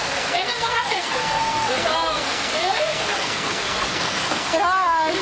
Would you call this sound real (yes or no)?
no